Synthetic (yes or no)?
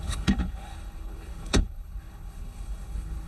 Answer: yes